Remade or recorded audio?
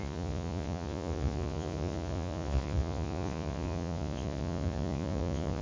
remade